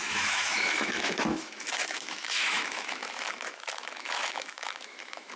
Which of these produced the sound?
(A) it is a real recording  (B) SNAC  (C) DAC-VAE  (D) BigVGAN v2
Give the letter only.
C